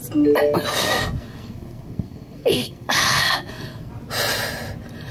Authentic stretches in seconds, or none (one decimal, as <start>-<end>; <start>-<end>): 0.0-0.8; 3.9-5.1